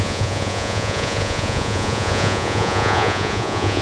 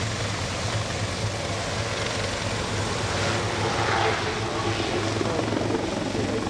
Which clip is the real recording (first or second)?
second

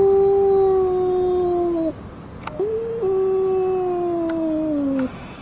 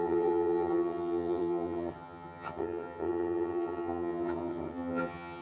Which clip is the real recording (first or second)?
first